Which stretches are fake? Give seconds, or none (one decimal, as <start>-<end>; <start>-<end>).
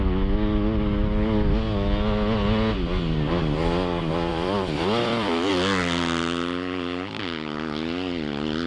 4.3-5.5